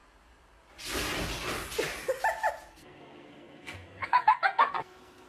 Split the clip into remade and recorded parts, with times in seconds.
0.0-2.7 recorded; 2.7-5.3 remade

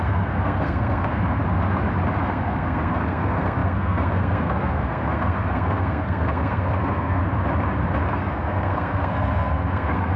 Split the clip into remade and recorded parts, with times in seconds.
0.0-1.4 remade; 1.4-2.2 recorded; 2.2-7.2 remade; 7.2-8.1 recorded; 8.1-10.2 remade

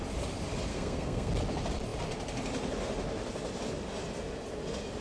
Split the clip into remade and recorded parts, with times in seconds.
0.0-0.7 recorded; 0.7-1.3 remade; 1.3-5.0 recorded